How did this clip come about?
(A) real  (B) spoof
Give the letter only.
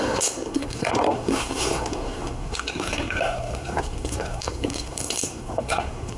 B